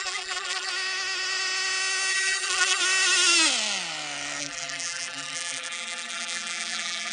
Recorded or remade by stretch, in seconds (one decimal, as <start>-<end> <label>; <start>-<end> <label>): 0.0-0.7 remade; 0.7-2.1 recorded; 2.1-2.8 remade; 2.8-4.4 recorded; 4.4-7.1 remade